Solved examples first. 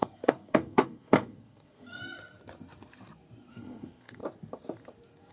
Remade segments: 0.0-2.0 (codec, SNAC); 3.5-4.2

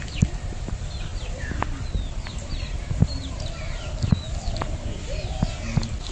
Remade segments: none

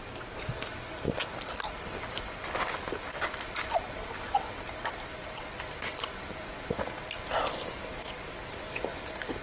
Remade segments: 4.0-4.6 (vocoder, WaveNeXt)

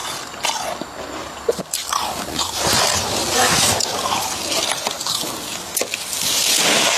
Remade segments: none

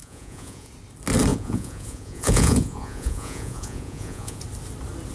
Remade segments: 0.0-0.7 (vocoder, Vocos); 1.3-4.4

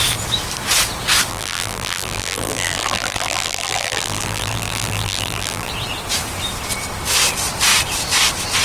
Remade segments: 1.3-5.7 (vocoder, BigVGAN v2)

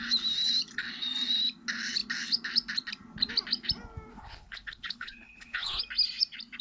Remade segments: 4.1-5.8 (codec, HILCodec)